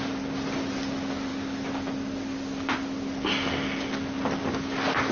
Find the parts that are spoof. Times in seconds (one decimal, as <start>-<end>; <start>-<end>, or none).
none